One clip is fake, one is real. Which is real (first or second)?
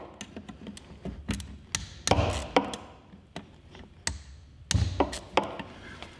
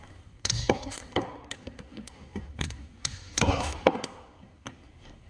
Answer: first